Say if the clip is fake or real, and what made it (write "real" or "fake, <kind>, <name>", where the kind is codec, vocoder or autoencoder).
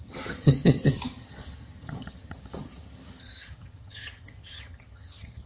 fake, vocoder, HiFi-GAN